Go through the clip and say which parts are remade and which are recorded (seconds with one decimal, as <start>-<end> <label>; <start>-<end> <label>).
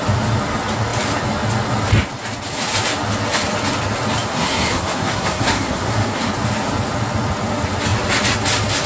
0.0-4.3 recorded; 4.3-6.3 remade; 6.3-8.9 recorded